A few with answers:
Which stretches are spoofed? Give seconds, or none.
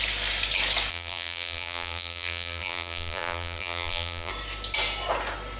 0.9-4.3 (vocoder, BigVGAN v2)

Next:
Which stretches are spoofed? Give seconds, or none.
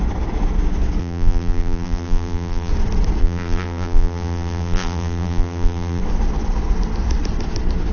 1.0-2.7 (vocoder, BigVGAN v2); 3.2-6.0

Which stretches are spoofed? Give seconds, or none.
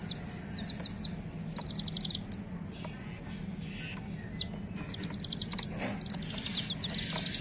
none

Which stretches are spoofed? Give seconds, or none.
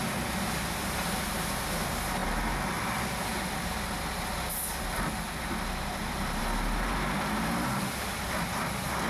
none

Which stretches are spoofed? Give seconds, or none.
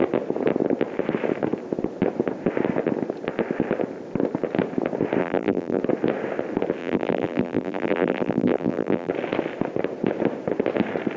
5.2-5.8 (vocoder, BigVGAN v2); 6.8-9.1